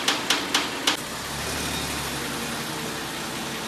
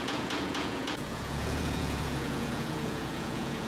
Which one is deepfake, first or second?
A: second